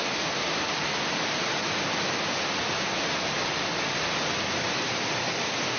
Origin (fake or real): real